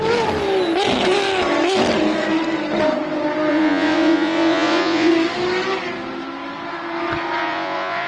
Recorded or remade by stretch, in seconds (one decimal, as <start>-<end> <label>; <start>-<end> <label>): 0.0-3.5 recorded; 3.5-5.1 remade; 5.1-7.4 recorded; 7.4-8.1 remade